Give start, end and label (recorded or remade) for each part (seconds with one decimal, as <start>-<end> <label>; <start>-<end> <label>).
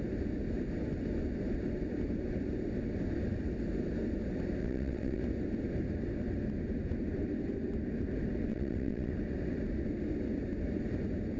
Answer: 0.0-4.6 recorded; 4.6-5.2 remade; 5.2-8.5 recorded; 8.5-9.1 remade; 9.1-11.4 recorded